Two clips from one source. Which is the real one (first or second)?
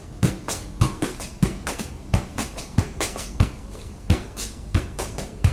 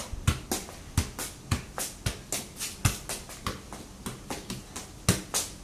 second